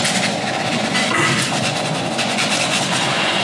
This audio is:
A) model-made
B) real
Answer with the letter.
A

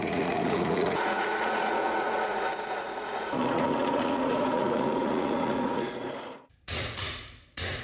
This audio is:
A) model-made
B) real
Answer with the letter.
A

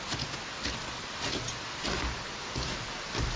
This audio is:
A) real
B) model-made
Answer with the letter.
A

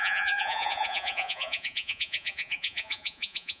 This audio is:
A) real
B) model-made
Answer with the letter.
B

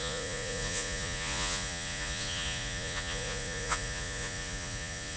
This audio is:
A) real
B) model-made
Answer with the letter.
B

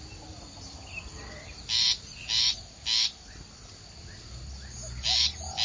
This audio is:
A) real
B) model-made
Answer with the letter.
A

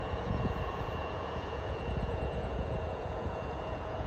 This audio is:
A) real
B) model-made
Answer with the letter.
B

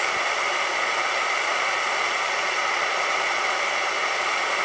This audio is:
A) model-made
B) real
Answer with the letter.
B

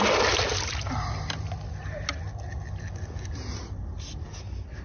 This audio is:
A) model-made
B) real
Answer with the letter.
B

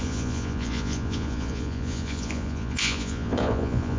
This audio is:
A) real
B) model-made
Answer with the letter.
B